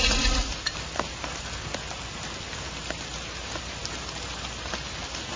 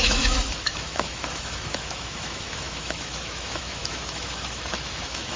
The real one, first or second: first